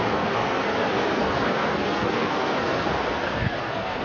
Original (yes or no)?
no